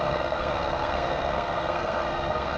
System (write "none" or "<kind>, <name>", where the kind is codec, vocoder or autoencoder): codec, SNAC